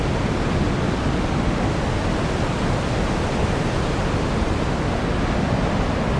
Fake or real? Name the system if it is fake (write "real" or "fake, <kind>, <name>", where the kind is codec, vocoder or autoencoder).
real